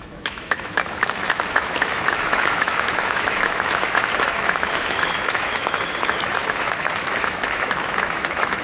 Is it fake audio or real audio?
fake